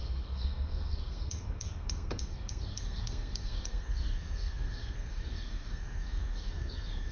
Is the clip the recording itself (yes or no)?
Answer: no